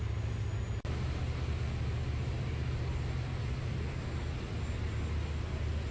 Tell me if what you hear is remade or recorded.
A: recorded